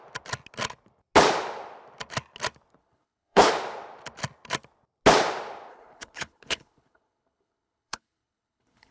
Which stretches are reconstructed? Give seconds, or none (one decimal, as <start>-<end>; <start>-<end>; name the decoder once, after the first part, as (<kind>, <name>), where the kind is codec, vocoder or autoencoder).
2.8-3.5 (codec, HILCodec); 5.7-8.9